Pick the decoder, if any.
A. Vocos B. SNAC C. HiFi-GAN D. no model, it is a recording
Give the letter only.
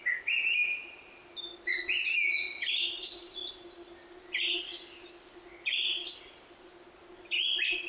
D